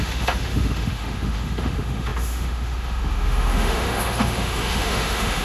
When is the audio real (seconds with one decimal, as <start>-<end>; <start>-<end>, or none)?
none